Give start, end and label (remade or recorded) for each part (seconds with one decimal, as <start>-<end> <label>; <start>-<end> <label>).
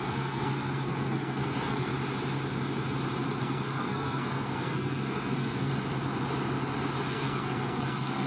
0.0-1.9 remade; 1.9-3.4 recorded; 3.4-5.7 remade; 5.7-7.1 recorded; 7.1-8.3 remade